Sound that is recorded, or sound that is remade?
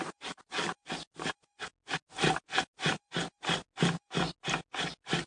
recorded